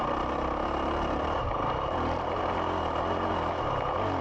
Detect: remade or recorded recorded